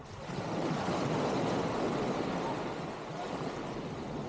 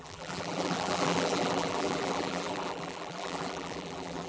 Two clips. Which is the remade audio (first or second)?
second